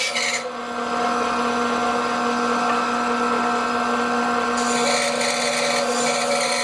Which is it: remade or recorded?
recorded